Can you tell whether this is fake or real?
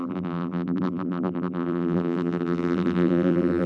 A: fake